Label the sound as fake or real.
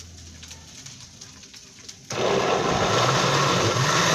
real